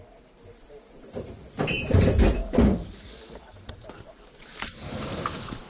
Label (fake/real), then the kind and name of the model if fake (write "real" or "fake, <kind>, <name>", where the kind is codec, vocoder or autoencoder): fake, vocoder, BigVGAN v2